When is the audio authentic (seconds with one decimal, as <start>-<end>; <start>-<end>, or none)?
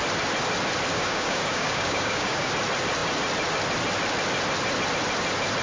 0.0-0.9; 2.5-5.6